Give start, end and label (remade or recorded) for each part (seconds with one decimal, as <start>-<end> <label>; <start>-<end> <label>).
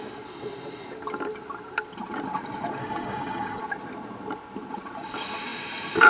0.0-2.8 recorded; 2.8-3.6 remade; 3.6-6.1 recorded